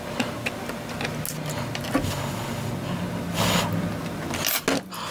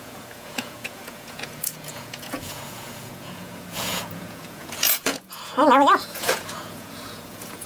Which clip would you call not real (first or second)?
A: second